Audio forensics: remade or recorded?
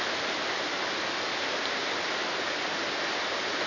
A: recorded